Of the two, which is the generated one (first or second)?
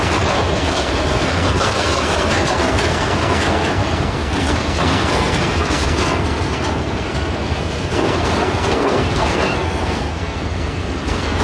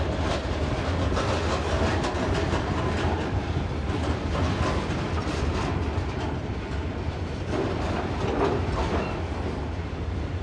first